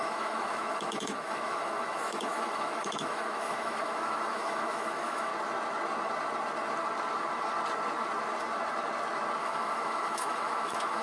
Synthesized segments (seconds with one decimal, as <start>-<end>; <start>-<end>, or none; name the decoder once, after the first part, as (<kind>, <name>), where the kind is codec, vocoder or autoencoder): 0.0-5.3 (autoencoder, DAC-VAE); 9.4-11.0